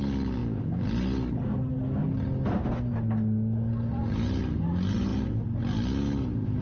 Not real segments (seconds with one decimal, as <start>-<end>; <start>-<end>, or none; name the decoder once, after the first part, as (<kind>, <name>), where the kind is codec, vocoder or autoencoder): none